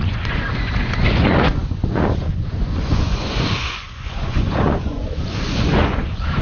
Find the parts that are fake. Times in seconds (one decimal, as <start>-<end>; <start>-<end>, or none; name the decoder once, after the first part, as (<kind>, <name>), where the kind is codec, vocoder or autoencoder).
0.0-6.4 (vocoder, Vocos)